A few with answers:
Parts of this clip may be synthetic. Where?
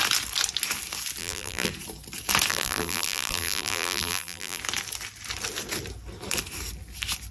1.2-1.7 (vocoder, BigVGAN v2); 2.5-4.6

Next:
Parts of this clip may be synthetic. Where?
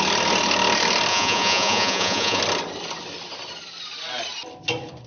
1.1-2.4 (vocoder, Vocos)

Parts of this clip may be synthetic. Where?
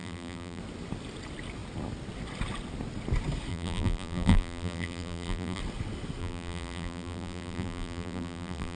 0.0-0.6 (vocoder, BigVGAN v2); 3.5-5.6; 6.2-8.8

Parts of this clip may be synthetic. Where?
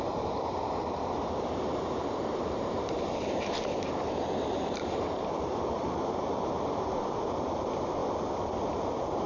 0.0-9.3 (vocoder, BigVGAN v2)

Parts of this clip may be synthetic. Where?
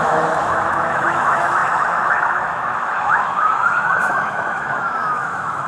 0.0-5.7 (autoencoder, DAC-VAE)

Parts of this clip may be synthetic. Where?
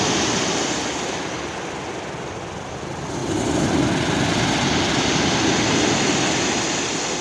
none